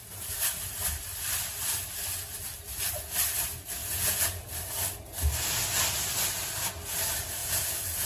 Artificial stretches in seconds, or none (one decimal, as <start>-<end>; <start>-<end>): 3.8-4.3; 7.4-8.1